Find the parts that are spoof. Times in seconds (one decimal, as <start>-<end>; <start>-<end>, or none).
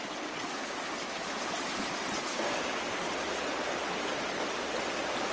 2.3-2.8